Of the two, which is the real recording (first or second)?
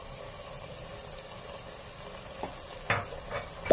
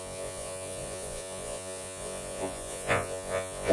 first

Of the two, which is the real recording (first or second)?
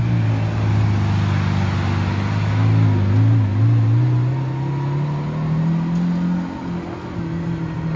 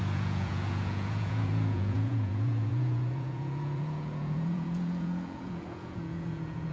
first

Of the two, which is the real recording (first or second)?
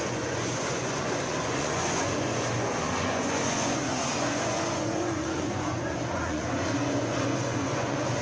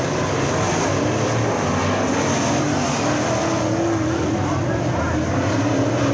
second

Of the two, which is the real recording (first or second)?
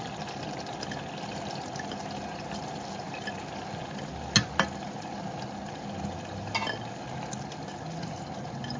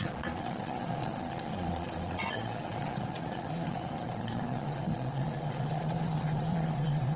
first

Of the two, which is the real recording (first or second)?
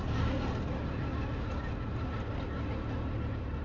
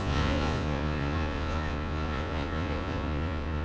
first